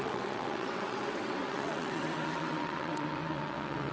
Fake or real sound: fake